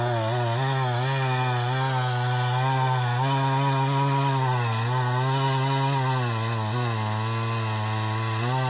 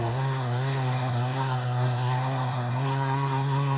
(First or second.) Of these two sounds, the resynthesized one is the second